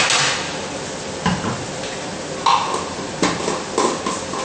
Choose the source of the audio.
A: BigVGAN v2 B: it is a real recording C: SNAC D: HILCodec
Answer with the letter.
B